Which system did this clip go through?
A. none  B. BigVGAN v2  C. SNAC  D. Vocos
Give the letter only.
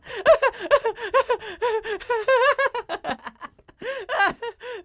A